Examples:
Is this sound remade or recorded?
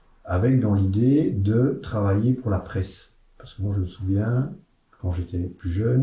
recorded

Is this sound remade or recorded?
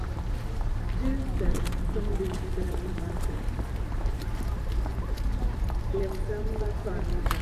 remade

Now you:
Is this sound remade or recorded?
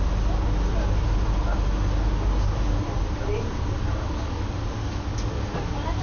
recorded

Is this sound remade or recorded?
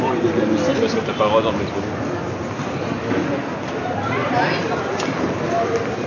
recorded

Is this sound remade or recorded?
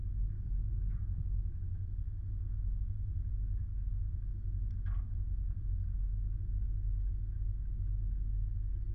recorded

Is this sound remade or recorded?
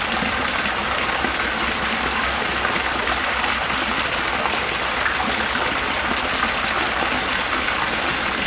recorded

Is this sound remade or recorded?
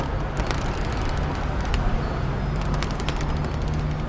recorded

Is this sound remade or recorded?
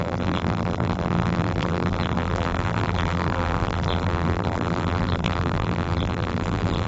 remade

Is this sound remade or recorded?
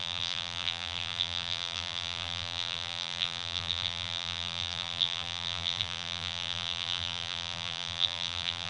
remade